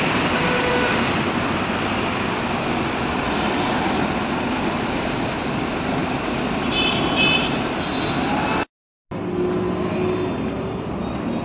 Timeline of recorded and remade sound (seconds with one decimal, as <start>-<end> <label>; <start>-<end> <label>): 0.0-6.0 remade; 6.0-11.4 recorded